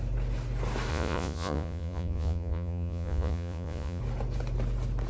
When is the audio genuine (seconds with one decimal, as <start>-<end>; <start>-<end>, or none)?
0.0-0.9; 4.0-5.1